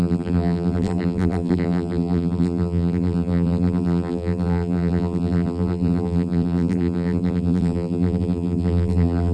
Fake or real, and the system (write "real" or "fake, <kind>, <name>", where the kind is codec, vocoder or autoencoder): fake, vocoder, BigVGAN v2